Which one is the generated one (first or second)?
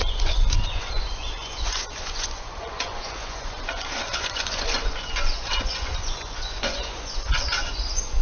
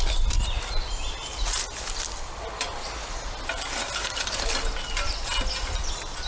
first